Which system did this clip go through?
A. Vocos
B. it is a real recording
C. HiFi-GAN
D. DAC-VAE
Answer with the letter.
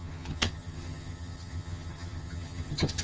C